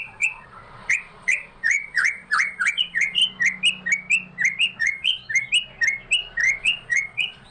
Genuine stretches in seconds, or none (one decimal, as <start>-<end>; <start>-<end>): 3.2-4.8; 5.2-6.6